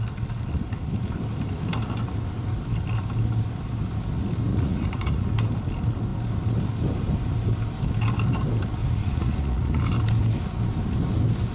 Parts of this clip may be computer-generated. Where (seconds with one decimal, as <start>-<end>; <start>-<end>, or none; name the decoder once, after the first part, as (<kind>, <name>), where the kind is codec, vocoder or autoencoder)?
4.5-5.3 (vocoder, Vocos); 8.8-9.8